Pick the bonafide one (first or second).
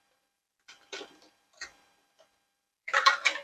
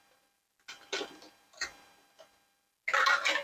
second